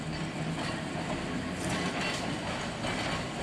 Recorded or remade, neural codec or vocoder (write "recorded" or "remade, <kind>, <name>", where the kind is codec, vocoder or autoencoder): recorded